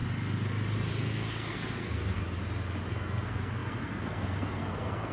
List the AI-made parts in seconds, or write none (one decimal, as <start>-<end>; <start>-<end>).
1.0-2.2; 2.9-5.1